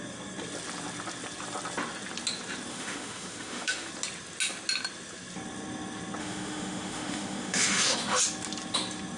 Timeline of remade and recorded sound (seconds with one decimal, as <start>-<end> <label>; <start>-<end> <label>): 0.0-2.7 recorded; 2.7-3.9 remade; 3.9-6.2 recorded; 6.2-8.2 remade; 8.2-9.2 recorded